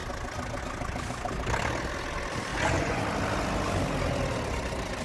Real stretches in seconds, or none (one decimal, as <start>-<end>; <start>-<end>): 0.0-2.5; 3.0-5.0